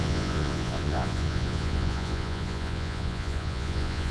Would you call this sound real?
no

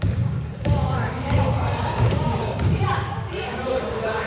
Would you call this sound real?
no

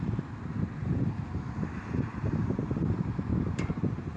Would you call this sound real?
no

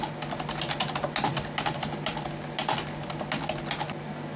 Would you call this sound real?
yes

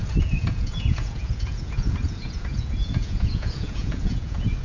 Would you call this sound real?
no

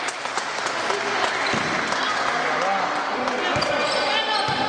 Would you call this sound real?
yes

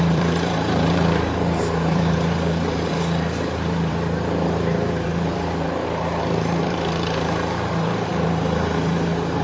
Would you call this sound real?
no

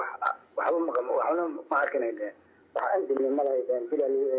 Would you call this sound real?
no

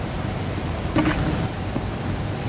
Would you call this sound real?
yes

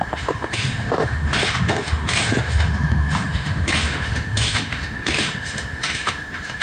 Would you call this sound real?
no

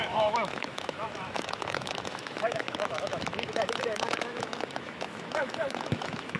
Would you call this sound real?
no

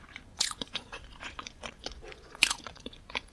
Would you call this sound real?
no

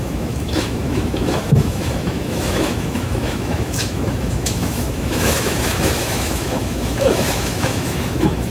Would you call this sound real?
no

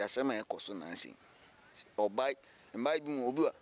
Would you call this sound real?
yes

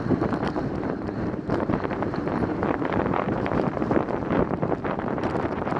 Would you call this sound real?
no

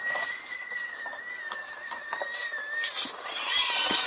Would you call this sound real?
yes